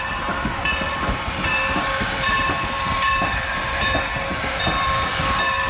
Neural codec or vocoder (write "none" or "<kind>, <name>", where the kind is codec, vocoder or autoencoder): vocoder, BigVGAN v2